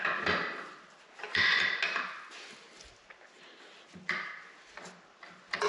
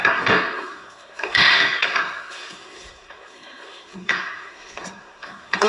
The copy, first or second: second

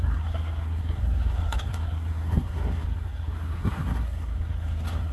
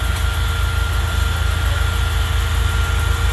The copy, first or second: first